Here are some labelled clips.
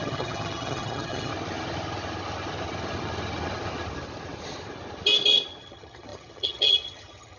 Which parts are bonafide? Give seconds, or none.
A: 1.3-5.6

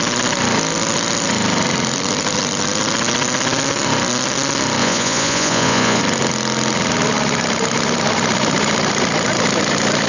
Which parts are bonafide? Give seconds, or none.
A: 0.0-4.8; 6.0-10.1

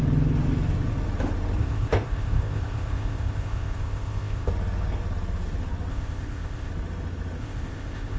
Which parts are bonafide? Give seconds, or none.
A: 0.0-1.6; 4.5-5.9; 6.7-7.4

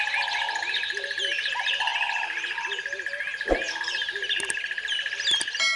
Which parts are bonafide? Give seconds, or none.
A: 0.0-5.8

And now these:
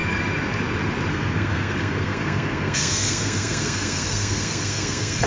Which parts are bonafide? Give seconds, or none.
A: 0.0-1.1